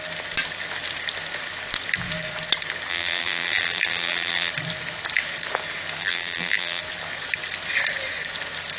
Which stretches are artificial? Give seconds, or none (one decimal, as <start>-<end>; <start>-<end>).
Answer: 2.9-4.5; 6.0-6.8